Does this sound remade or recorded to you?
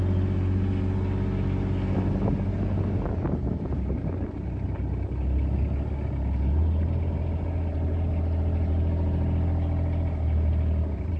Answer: recorded